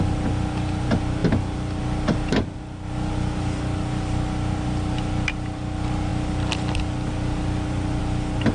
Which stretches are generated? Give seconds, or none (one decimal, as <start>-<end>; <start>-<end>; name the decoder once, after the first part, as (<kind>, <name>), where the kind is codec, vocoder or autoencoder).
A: none